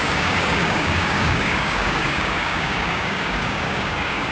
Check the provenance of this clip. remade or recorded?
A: remade